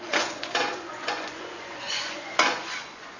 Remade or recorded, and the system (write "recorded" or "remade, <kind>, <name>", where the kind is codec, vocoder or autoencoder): remade, vocoder, Vocos